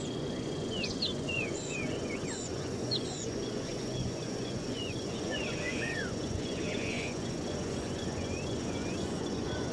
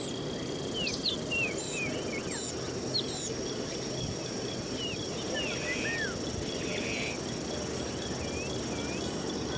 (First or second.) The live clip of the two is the second